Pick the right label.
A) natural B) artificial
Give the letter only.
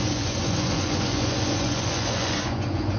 B